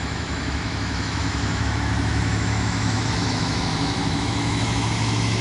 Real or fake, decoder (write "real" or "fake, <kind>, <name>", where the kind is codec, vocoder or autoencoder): fake, autoencoder, DAC-VAE